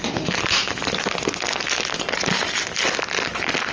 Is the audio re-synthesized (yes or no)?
no